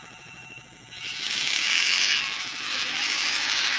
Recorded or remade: remade